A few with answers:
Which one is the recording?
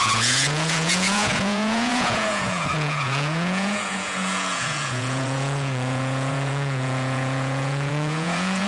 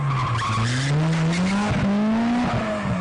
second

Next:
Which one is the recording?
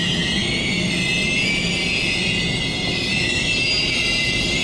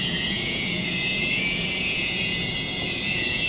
first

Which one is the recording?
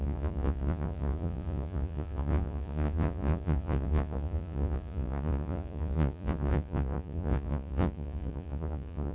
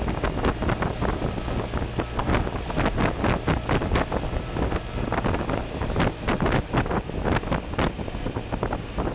second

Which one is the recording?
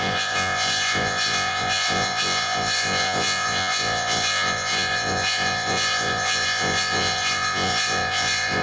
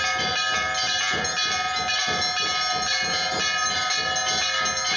second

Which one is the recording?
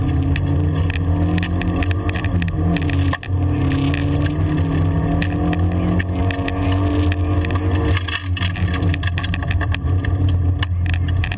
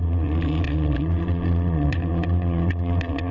first